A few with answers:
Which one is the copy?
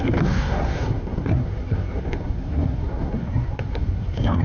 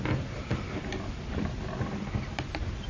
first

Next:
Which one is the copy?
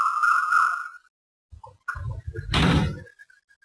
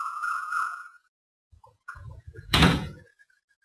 second